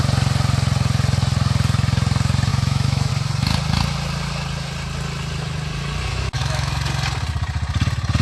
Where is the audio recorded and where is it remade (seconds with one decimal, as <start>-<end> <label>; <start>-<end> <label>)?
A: 0.0-2.5 recorded; 2.5-3.1 remade; 3.1-6.1 recorded; 6.1-6.7 remade; 6.7-8.2 recorded